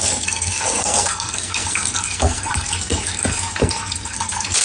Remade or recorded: remade